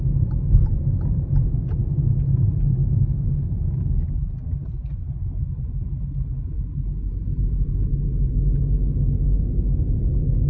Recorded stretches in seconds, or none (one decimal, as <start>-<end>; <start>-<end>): 0.0-1.8; 4.1-7.9; 10.0-10.5

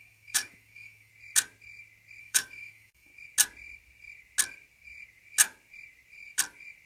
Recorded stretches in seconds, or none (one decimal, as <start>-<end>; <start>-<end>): 1.1-2.2; 3.1-6.9